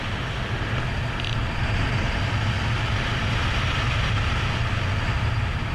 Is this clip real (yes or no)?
yes